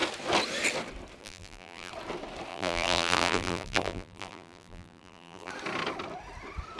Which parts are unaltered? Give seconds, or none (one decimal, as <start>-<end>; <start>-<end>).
0.0-1.2; 1.9-2.5; 5.5-6.8